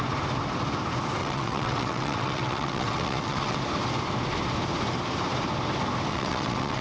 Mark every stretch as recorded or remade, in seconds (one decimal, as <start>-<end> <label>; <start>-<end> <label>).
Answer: 0.0-1.2 recorded; 1.2-3.6 remade; 3.6-6.1 recorded; 6.1-6.8 remade